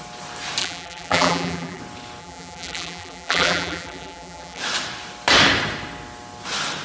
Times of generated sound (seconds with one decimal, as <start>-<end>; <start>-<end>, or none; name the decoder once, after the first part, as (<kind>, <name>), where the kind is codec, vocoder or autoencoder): 0.6-1.8 (vocoder, BigVGAN v2); 2.2-4.6